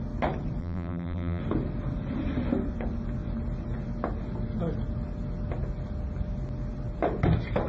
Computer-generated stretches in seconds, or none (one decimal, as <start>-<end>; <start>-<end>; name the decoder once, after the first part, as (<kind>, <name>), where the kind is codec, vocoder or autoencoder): 0.6-1.4 (vocoder, BigVGAN v2)